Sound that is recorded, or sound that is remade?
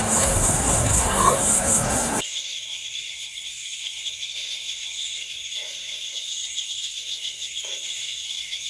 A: remade